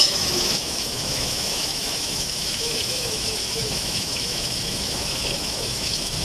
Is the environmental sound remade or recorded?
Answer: remade